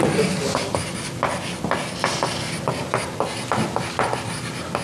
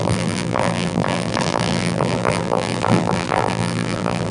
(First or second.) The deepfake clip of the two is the second